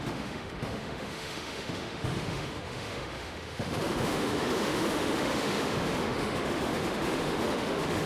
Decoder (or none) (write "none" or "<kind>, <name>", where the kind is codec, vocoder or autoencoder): autoencoder, DAC-VAE